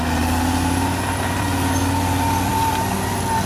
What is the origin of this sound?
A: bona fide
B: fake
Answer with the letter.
A